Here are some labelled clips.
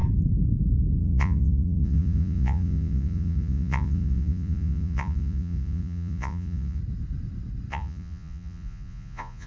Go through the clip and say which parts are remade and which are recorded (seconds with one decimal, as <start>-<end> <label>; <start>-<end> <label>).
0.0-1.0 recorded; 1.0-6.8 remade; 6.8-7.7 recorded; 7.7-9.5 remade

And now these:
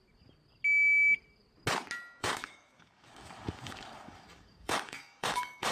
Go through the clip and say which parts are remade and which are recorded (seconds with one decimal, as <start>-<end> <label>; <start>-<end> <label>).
0.0-2.2 recorded; 2.2-5.7 remade

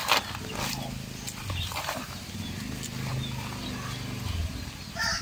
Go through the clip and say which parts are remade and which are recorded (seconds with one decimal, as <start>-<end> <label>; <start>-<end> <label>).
0.0-5.2 recorded

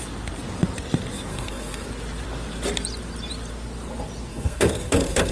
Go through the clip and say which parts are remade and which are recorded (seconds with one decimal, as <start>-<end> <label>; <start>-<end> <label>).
0.0-1.3 recorded; 1.3-1.9 remade; 1.9-4.3 recorded; 4.3-5.3 remade